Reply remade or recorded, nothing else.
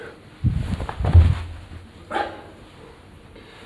recorded